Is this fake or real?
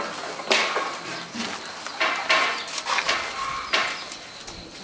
real